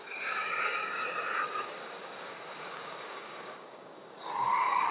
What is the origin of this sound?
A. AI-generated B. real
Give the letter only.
A